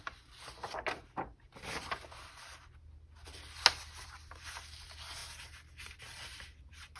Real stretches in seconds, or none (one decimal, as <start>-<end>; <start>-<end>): 0.0-7.0